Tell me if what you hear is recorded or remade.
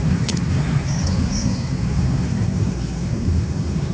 remade